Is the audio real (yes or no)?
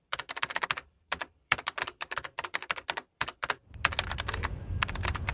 no